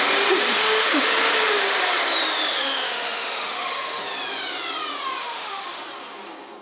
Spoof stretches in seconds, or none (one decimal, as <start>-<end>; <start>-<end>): 0.5-1.1; 2.5-4.0; 5.2-5.8